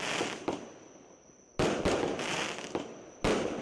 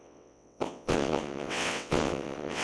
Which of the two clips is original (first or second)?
first